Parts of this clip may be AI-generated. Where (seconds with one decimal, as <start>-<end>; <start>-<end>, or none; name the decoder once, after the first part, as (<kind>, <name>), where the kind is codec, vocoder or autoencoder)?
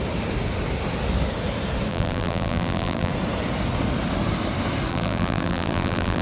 1.9-3.1 (vocoder, BigVGAN v2); 4.9-6.2